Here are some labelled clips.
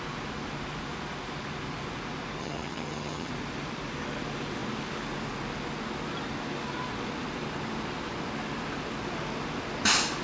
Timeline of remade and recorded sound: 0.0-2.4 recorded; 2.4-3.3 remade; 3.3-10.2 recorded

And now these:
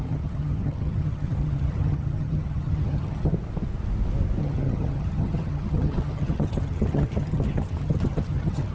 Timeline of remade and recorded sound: 0.0-3.3 remade; 3.3-4.4 recorded; 4.4-8.7 remade

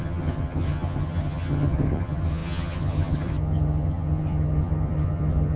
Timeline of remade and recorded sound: 0.0-5.6 remade

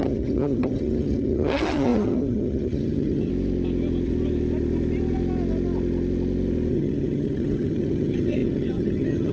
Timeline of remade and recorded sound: 0.0-3.3 remade; 3.3-6.7 recorded; 6.7-9.3 remade

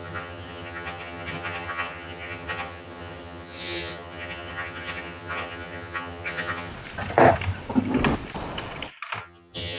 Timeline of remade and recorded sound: 0.0-6.7 remade; 6.7-9.2 recorded; 9.2-9.8 remade

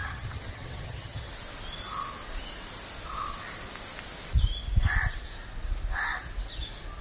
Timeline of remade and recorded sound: 0.0-1.3 remade; 1.3-7.0 recorded

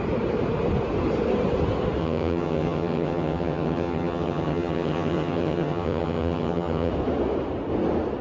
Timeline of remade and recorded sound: 0.0-2.0 recorded; 2.0-6.9 remade; 6.9-8.2 recorded